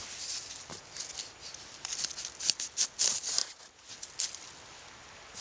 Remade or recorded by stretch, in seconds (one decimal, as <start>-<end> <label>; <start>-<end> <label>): 0.0-5.4 recorded